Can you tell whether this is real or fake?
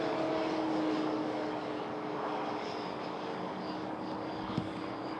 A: fake